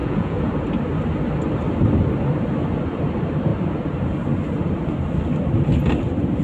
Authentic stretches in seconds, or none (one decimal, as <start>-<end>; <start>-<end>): 0.5-6.4